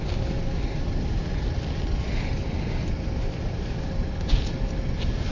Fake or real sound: real